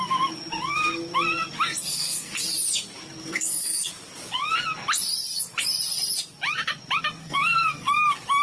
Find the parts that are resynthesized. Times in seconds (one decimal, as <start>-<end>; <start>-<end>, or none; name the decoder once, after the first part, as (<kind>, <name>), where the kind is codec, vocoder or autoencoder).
1.9-2.4 (codec, SNAC); 3.2-3.9; 7.2-7.9